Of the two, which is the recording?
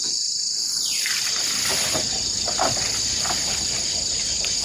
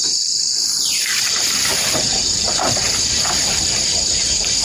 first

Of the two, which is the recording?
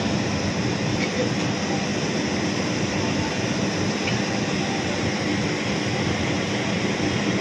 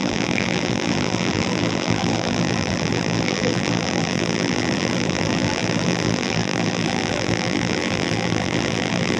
first